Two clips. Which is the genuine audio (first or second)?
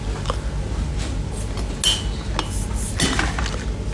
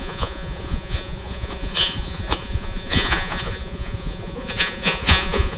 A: first